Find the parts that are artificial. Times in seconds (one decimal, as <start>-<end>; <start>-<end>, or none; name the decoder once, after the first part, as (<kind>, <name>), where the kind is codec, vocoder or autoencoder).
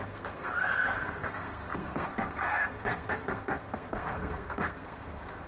0.0-5.5 (codec, SNAC)